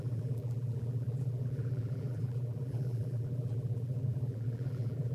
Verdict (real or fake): fake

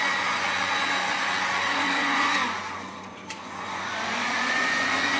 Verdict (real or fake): fake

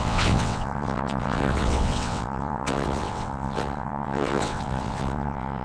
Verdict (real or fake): fake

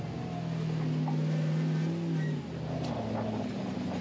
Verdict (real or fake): real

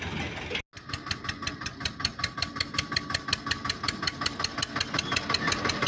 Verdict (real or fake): real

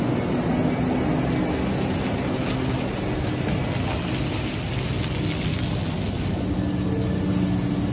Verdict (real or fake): real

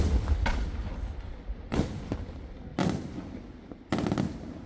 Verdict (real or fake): real